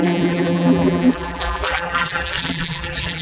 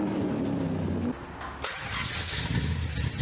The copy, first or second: first